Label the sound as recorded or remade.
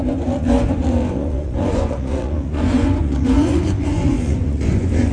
remade